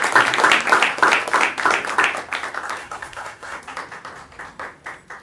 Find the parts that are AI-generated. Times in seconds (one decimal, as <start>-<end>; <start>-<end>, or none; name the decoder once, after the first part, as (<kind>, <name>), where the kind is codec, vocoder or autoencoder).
2.8-3.6 (codec, SNAC)